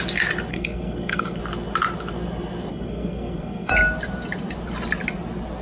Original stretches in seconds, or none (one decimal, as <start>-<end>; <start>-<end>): 0.0-0.5; 1.4-2.7; 3.7-5.6